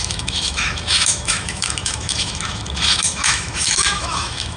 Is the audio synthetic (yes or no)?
yes